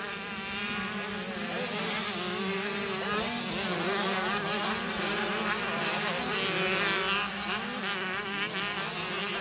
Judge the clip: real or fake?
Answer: real